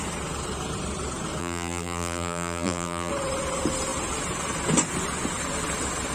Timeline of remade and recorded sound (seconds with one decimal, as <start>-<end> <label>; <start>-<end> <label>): 0.0-1.4 recorded; 1.4-3.1 remade; 3.1-6.1 recorded

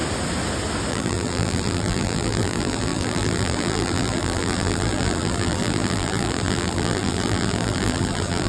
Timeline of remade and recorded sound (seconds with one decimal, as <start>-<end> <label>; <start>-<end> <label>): 0.0-0.9 recorded; 0.9-8.5 remade